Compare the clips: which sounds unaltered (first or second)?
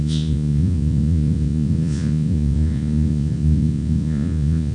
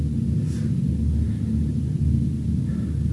second